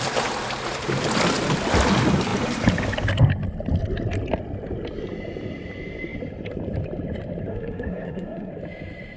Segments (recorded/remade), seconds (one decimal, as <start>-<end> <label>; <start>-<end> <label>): 0.0-7.5 recorded; 7.5-8.5 remade; 8.5-9.2 recorded